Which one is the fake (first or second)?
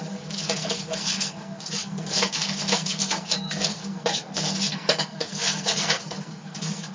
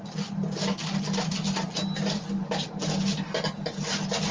first